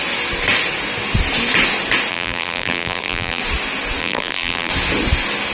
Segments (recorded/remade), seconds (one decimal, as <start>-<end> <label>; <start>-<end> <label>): 0.0-2.1 recorded; 2.1-3.4 remade; 3.4-4.0 recorded; 4.0-4.7 remade; 4.7-5.5 recorded